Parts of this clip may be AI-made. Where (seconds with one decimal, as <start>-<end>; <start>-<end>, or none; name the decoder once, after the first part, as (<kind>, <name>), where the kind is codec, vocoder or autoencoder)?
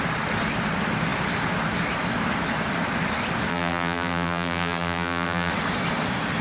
3.5-5.5 (vocoder, BigVGAN v2)